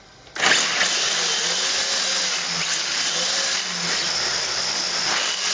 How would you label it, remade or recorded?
recorded